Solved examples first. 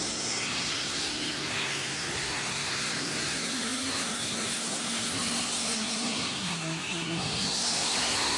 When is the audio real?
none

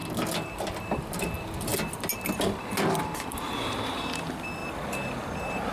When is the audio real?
0.0-5.7

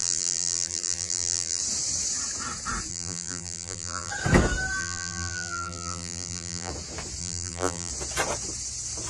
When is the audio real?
1.6-2.9; 4.1-4.8; 6.7-7.2; 7.9-9.1

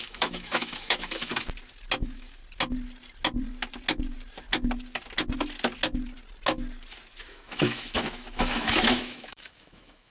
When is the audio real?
1.3-2.0; 2.4-7.2

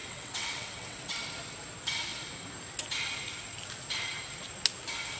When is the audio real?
1.2-5.2